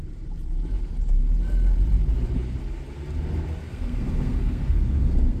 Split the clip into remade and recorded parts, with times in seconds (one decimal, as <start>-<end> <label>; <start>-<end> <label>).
0.0-3.7 recorded; 3.7-5.4 remade